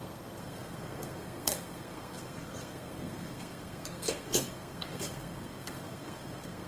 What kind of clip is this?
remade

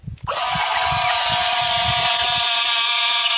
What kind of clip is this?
recorded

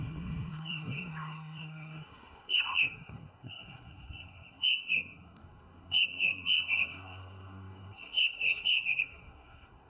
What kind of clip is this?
remade